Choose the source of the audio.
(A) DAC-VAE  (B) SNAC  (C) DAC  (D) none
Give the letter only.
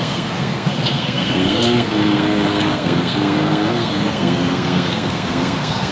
B